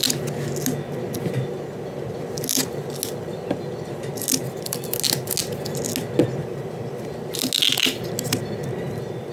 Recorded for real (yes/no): yes